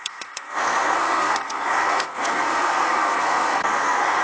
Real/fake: fake